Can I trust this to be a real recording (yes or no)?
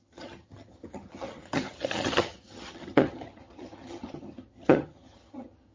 no